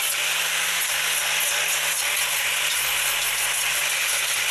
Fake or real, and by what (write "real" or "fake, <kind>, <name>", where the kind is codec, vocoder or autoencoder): real